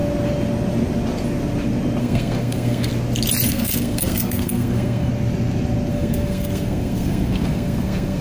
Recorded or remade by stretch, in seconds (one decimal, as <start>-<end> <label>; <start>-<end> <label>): 0.0-2.0 recorded; 2.0-2.9 remade; 2.9-3.5 recorded; 3.5-5.1 remade; 5.1-5.9 recorded; 5.9-8.2 remade